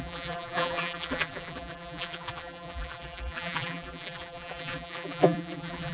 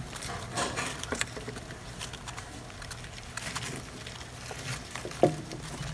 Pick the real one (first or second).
second